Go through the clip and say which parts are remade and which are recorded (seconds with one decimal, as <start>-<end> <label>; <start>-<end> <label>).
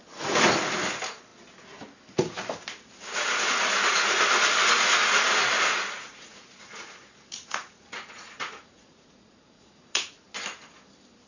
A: 0.0-5.4 recorded; 5.4-10.2 remade; 10.2-11.3 recorded